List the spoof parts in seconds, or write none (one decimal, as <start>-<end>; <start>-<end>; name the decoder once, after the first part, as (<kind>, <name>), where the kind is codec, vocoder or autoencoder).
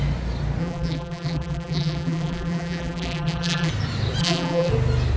0.6-3.7 (vocoder, BigVGAN v2); 4.2-4.7